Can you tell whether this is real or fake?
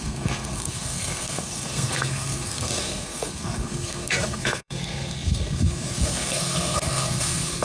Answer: fake